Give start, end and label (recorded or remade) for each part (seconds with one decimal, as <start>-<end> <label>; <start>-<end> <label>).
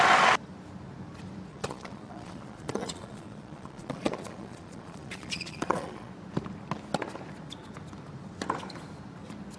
0.0-1.5 recorded; 1.5-6.1 remade; 6.1-9.6 recorded